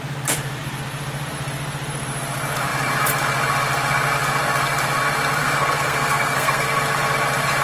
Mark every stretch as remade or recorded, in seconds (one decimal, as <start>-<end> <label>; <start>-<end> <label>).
0.0-5.4 recorded; 5.4-6.8 remade; 6.8-7.6 recorded